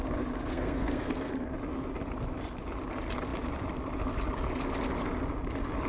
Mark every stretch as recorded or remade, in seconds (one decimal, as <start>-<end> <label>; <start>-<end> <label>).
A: 0.0-0.5 recorded; 0.5-1.3 remade; 1.3-5.9 recorded